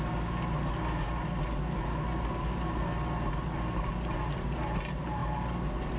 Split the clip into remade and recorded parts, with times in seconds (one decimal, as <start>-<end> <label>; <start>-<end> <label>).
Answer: 0.0-6.0 recorded